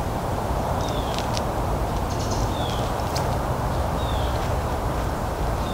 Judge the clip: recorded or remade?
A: remade